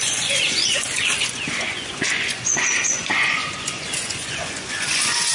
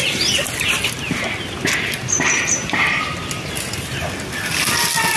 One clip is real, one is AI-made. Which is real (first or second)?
second